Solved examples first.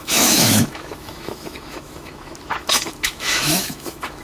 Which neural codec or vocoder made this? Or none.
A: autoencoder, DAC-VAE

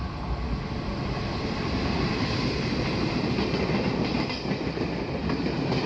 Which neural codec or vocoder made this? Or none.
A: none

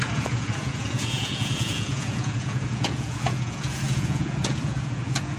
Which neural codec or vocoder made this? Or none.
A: vocoder, Vocos